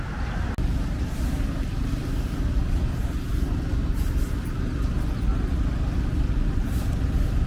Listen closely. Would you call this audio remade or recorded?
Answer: recorded